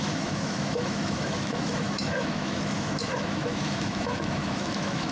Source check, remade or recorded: remade